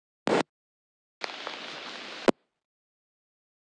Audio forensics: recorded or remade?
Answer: recorded